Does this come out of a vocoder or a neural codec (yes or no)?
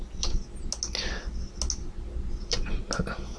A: no